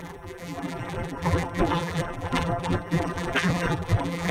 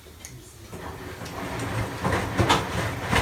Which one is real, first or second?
second